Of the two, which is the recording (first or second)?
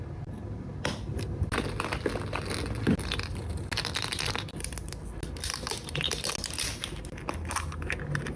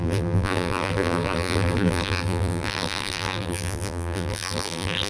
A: first